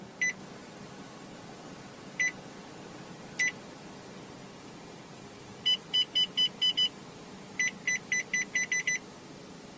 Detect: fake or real real